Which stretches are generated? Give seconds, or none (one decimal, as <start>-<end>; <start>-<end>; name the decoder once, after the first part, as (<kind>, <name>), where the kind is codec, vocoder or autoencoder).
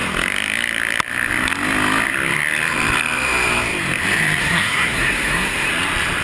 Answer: 4.4-5.7 (codec, SNAC)